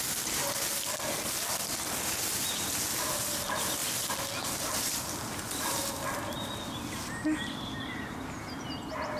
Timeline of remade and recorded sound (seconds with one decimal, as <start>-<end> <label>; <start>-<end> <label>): 0.0-9.2 recorded